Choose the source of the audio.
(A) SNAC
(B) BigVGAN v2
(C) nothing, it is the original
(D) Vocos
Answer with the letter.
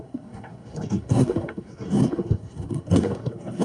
A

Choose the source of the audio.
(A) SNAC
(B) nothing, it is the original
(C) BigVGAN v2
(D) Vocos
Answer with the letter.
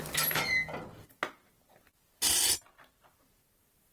B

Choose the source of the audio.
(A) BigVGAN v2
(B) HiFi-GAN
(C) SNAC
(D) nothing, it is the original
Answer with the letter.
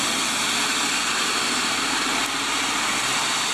D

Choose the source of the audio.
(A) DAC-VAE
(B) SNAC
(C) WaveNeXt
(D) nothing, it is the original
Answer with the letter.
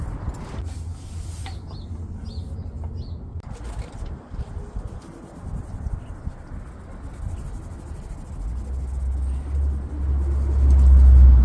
D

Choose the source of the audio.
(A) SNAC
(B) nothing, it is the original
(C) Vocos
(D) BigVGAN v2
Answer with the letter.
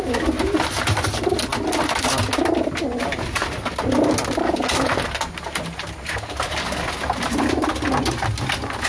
B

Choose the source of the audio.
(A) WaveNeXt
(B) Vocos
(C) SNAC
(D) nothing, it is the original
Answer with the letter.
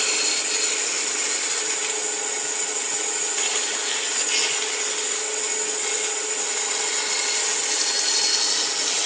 D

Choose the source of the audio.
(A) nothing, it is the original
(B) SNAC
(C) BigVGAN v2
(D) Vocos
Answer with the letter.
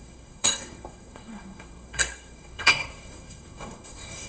B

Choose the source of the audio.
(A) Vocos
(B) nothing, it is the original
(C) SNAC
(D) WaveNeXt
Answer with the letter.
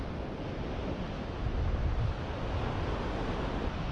B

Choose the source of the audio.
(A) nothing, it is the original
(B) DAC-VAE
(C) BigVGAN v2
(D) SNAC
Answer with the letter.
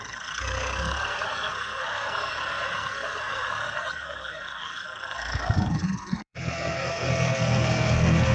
D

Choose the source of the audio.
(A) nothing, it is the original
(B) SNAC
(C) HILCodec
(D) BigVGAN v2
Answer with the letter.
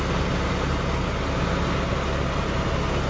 A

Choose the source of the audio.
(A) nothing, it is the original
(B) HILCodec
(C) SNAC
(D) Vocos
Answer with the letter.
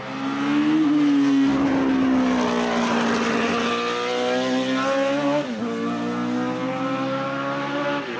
A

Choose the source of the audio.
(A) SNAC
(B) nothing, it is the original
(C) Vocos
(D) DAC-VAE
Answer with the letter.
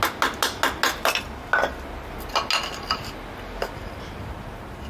B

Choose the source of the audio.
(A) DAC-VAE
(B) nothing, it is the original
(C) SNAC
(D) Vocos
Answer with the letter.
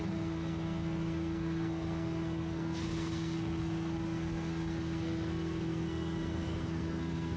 C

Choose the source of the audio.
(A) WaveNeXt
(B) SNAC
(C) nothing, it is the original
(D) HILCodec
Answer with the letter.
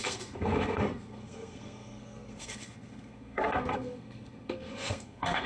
B